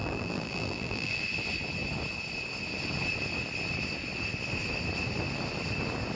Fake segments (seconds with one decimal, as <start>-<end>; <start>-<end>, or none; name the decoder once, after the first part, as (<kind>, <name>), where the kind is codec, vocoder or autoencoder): 0.0-1.2 (vocoder, BigVGAN v2)